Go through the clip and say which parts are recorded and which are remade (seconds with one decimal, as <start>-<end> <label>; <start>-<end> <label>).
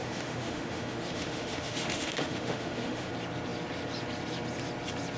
0.0-3.1 remade; 3.1-5.2 recorded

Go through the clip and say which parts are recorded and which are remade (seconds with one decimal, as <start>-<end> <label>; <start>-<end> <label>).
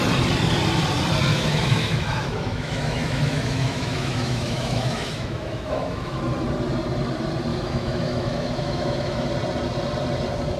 0.0-1.3 recorded; 1.3-6.2 remade; 6.2-7.5 recorded; 7.5-9.3 remade; 9.3-10.6 recorded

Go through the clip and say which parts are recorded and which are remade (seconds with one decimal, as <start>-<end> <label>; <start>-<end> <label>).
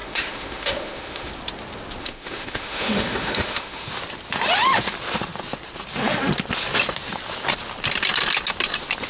0.0-1.3 remade; 1.3-2.0 recorded; 2.0-3.9 remade; 3.9-9.1 recorded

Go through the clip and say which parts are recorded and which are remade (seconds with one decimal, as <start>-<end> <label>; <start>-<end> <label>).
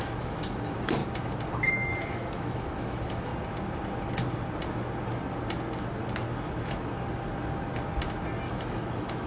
0.0-1.0 remade; 1.0-1.7 recorded; 1.7-3.3 remade; 3.3-8.5 recorded; 8.5-9.3 remade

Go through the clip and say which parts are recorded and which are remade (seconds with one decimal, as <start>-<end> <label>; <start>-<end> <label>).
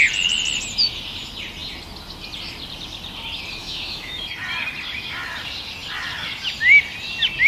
0.0-3.6 recorded; 3.6-4.3 remade; 4.3-7.5 recorded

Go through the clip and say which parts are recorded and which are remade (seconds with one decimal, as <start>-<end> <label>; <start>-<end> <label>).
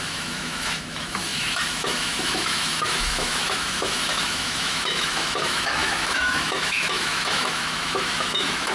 0.0-8.7 remade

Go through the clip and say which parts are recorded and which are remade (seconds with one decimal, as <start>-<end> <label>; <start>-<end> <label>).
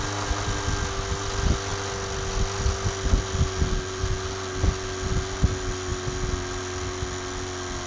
0.0-7.9 recorded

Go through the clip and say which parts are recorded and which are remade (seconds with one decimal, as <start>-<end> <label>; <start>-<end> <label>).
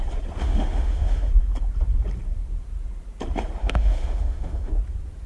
0.0-0.4 recorded; 0.4-1.3 remade; 1.3-3.6 recorded; 3.6-4.7 remade; 4.7-5.3 recorded